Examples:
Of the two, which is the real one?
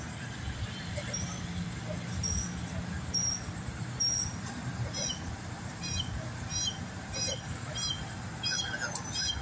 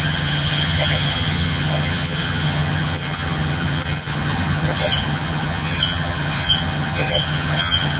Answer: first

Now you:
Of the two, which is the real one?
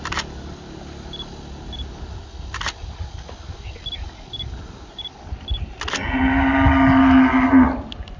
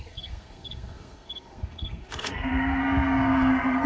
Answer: first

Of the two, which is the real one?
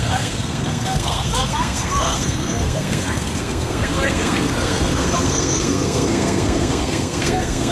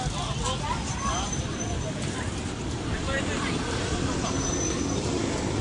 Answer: second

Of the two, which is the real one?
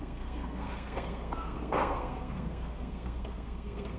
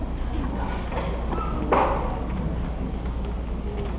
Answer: second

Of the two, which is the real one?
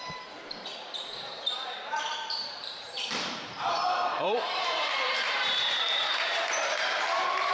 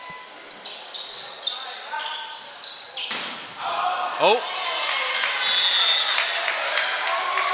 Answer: second